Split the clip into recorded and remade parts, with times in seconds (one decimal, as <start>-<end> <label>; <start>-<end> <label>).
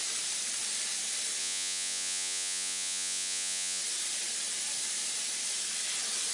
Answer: 0.0-1.4 recorded; 1.4-3.8 remade; 3.8-6.3 recorded